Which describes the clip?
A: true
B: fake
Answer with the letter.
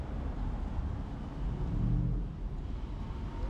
A